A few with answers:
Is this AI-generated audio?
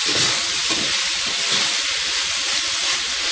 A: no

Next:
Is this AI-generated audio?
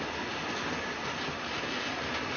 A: no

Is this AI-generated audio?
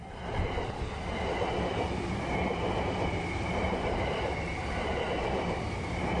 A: no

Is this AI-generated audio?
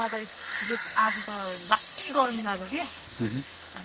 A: yes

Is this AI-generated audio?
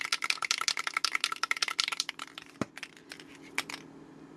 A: no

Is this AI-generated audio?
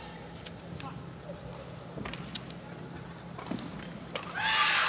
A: no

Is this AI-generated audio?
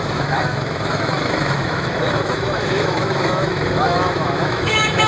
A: yes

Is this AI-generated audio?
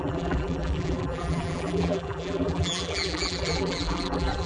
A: yes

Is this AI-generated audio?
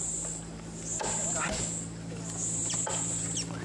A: no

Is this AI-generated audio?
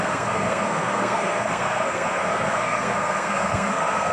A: yes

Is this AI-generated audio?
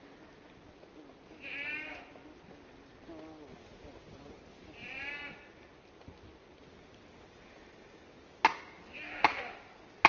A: no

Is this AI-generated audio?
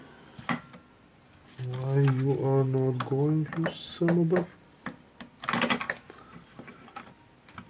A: no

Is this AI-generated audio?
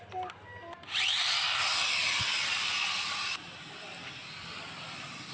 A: no